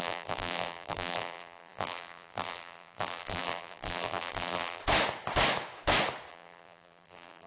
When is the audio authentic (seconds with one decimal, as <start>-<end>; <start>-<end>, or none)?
4.8-6.3